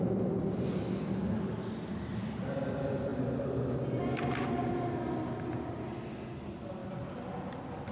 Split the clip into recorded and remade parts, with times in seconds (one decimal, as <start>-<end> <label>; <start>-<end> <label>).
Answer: 0.0-7.9 recorded